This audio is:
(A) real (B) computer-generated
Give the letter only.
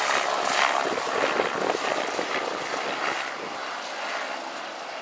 A